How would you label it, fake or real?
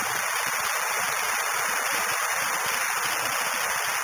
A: real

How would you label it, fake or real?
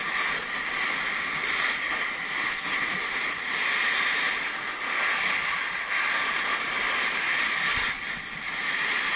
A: real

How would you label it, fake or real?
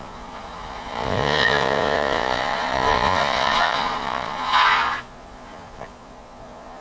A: fake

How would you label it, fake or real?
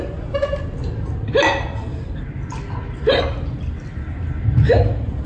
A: real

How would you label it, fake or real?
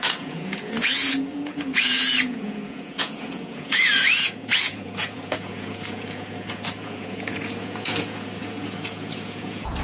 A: fake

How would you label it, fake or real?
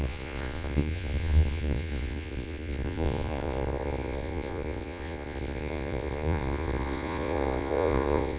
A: fake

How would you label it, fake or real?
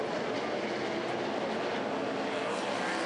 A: real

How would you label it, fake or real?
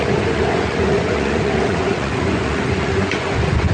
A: fake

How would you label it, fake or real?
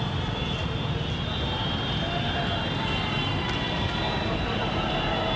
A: real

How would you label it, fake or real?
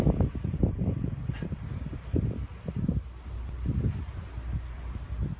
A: real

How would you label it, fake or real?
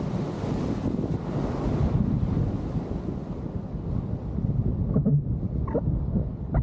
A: real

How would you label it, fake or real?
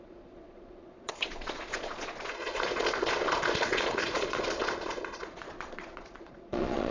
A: fake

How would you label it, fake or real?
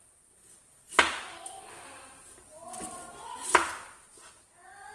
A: real